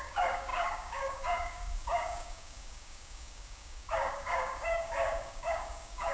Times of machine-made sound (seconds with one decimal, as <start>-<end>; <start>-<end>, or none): 0.0-6.1